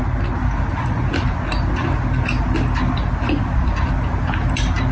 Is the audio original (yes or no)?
yes